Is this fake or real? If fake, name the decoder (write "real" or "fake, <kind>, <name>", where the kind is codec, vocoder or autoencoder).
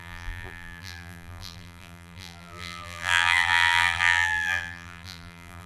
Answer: fake, vocoder, BigVGAN v2